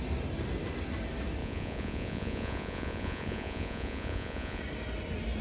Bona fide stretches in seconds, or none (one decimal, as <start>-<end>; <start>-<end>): 0.0-1.4; 4.6-5.4